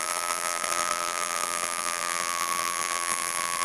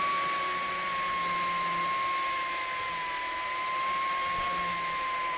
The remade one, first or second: first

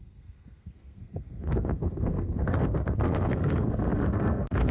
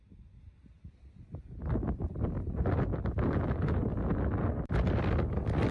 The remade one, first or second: first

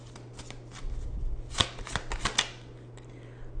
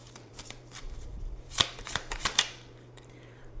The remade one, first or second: second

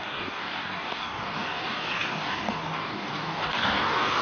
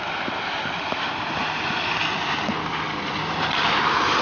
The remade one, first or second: first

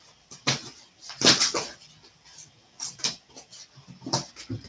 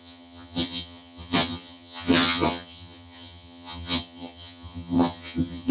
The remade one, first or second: second